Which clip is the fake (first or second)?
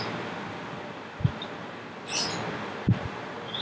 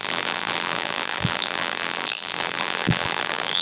second